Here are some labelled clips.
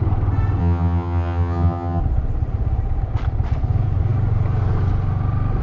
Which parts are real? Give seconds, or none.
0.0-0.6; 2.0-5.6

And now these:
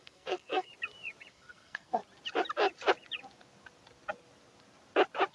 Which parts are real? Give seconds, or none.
0.7-1.3; 2.0-5.3

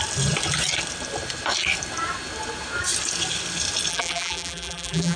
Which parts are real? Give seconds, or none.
0.0-3.9

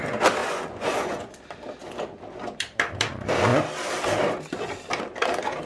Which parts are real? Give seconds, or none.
0.0-0.4; 1.3-5.7